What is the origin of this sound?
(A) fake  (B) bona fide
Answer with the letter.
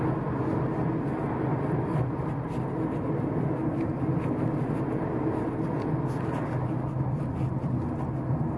B